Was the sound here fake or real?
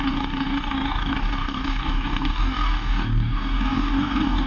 fake